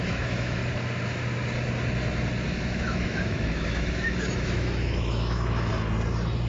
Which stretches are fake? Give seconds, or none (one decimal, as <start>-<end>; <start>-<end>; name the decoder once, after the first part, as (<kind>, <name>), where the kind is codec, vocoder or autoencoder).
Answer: 0.0-0.6 (autoencoder, DAC-VAE); 2.6-5.7